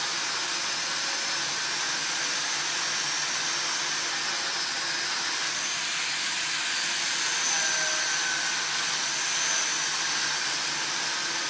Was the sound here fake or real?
real